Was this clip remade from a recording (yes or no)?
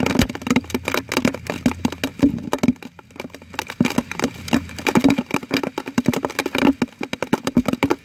no